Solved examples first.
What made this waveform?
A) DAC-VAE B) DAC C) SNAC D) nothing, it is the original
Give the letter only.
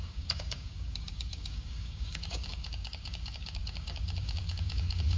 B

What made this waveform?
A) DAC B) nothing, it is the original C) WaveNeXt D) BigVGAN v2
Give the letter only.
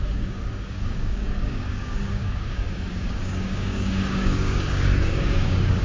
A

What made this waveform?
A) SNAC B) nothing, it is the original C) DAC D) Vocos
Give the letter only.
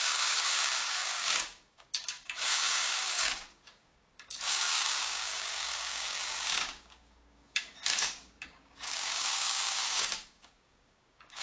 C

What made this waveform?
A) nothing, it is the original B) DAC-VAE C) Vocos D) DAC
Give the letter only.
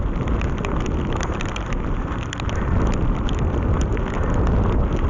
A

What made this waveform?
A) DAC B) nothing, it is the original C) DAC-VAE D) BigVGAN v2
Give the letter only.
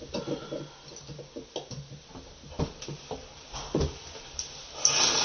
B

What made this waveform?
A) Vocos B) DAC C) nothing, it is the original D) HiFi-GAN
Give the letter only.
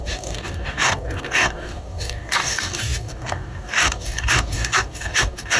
B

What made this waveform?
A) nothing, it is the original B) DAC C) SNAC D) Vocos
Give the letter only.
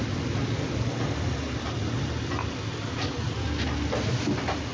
A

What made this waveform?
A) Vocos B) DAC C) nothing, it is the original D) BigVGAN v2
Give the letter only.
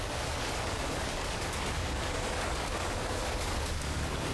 B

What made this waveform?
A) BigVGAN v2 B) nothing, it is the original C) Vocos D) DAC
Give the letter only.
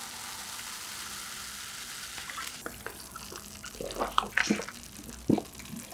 B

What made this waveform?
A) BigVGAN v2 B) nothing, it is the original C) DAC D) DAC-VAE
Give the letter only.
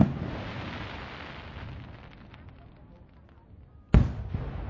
B